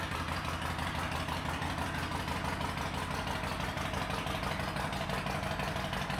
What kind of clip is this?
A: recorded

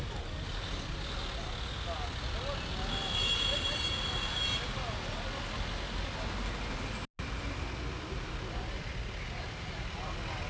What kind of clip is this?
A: recorded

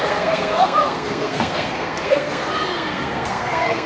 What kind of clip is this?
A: remade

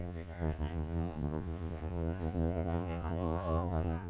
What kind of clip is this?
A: remade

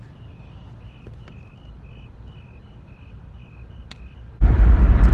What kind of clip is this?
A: recorded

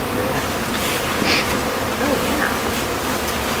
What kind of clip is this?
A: recorded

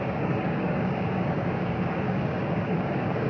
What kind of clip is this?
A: remade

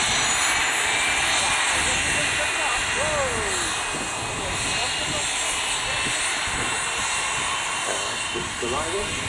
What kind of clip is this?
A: recorded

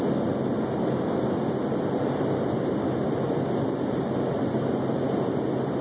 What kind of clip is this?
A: recorded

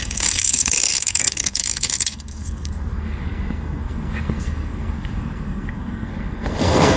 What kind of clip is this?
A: remade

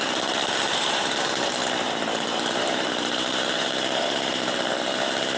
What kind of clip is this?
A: remade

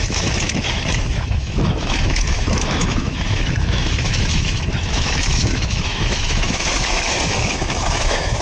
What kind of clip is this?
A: remade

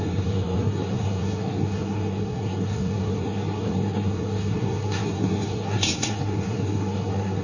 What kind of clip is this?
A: remade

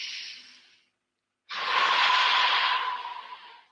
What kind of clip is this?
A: recorded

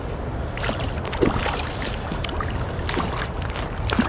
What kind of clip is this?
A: recorded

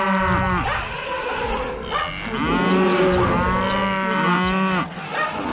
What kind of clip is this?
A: recorded